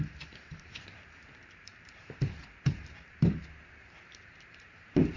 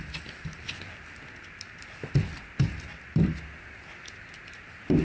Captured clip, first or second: second